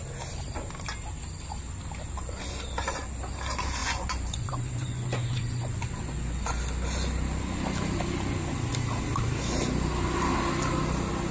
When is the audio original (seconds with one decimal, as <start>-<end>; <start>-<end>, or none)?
0.0-3.8; 6.6-11.3